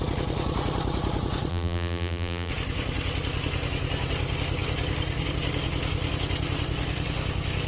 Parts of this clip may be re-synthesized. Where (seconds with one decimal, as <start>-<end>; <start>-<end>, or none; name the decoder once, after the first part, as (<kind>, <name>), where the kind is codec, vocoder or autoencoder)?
1.5-2.5 (vocoder, BigVGAN v2)